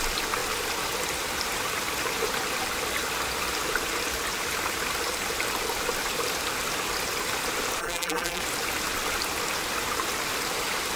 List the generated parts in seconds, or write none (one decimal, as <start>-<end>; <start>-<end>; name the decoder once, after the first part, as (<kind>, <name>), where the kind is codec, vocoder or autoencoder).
7.8-8.4 (vocoder, BigVGAN v2)